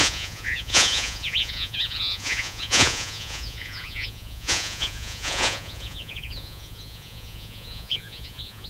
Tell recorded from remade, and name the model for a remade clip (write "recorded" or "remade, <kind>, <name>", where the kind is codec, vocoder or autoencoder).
remade, vocoder, Vocos